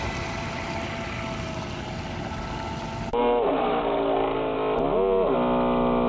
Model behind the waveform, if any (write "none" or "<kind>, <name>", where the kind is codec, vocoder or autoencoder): none